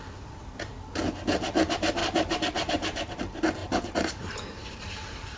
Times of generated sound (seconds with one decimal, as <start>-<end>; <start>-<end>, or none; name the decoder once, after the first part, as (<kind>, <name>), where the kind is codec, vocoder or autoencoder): 2.0-3.2 (vocoder, BigVGAN v2); 3.6-5.4